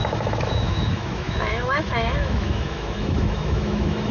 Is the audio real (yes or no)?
no